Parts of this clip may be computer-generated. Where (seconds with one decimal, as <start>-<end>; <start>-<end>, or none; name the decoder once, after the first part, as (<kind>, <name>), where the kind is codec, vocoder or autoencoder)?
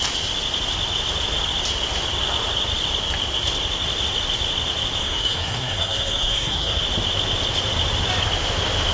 5.0-6.8 (codec, SNAC)